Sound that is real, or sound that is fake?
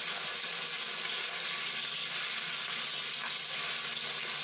real